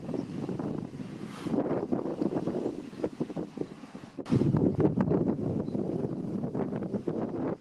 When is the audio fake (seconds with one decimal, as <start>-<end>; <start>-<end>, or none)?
none